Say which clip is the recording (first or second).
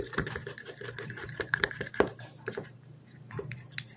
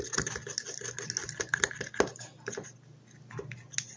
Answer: second